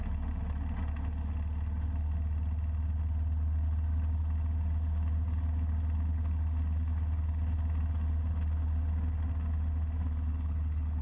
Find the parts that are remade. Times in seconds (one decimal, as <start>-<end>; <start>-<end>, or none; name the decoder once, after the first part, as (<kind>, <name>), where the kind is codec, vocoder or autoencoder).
10.3-11.0 (codec, HILCodec)